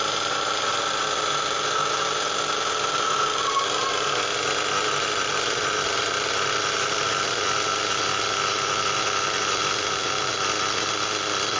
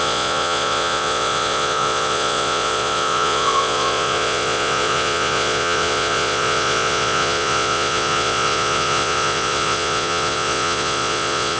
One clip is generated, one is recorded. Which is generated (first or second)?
second